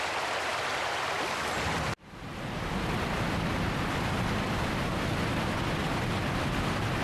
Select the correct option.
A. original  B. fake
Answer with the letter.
A